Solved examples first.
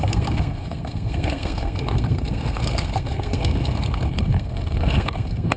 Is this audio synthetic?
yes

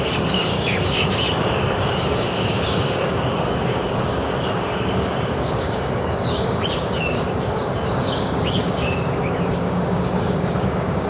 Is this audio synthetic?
yes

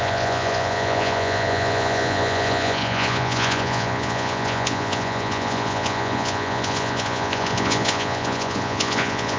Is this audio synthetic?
yes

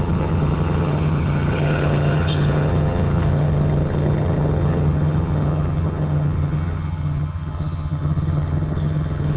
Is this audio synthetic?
yes